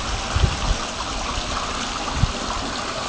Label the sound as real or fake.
real